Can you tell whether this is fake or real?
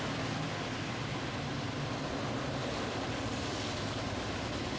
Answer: real